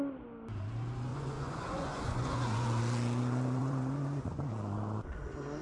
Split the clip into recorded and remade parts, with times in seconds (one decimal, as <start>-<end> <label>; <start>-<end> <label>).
0.0-1.1 recorded; 1.1-2.8 remade; 2.8-3.6 recorded; 3.6-5.6 remade